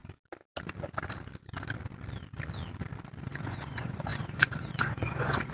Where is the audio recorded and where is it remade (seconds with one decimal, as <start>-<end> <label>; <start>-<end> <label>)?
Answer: 0.0-3.3 recorded; 3.3-5.5 remade